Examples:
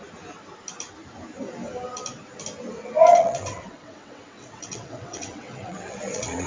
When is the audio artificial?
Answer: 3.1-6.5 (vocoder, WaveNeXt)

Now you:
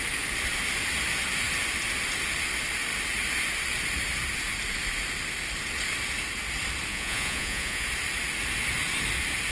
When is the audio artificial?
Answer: 6.9-7.9 (vocoder, Vocos)

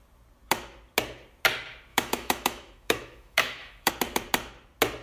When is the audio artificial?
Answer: 1.9-3.9 (autoencoder, DAC-VAE)

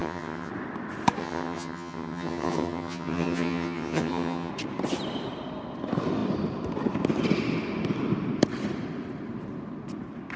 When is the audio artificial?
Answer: 0.0-0.5 (vocoder, HiFi-GAN); 1.2-4.5

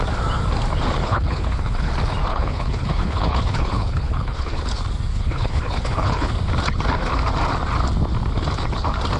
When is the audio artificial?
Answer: 1.0-1.9 (codec, HILCodec); 2.3-4.6; 5.1-6.3

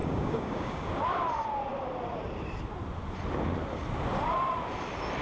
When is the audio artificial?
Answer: 0.0-0.9 (codec, DAC)

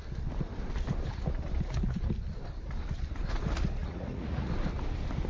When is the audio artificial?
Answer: 3.8-4.5 (vocoder, Vocos)

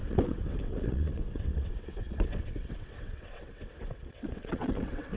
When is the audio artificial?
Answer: 0.0-5.2 (vocoder, WaveNeXt)